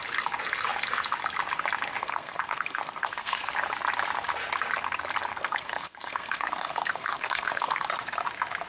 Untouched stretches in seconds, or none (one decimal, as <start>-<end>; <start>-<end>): 0.0-2.0; 3.5-5.3; 7.9-8.7